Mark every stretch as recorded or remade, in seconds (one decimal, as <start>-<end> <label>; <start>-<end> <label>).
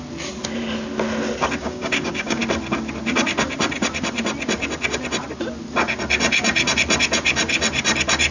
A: 0.0-1.6 recorded; 1.6-2.4 remade; 2.4-8.3 recorded